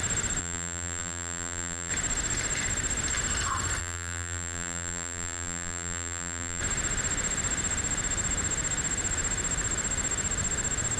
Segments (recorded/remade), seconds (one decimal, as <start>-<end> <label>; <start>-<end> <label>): 0.0-0.4 recorded; 0.4-1.9 remade; 1.9-3.8 recorded; 3.8-6.6 remade; 6.6-11.0 recorded